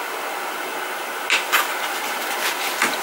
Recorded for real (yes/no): yes